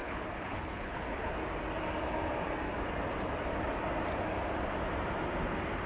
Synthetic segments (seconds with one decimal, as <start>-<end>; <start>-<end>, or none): 0.0-1.3